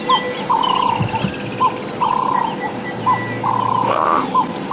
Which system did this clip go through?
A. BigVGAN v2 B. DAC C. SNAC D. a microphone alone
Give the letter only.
D